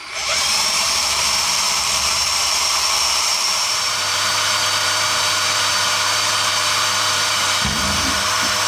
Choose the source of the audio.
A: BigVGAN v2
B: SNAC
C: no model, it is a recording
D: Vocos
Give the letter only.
A